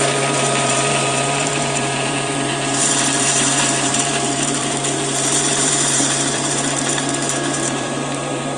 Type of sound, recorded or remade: remade